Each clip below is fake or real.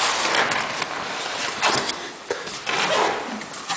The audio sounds real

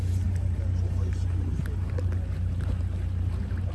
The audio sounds real